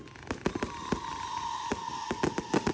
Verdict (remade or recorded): recorded